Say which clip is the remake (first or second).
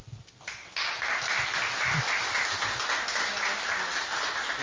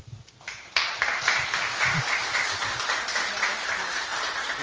second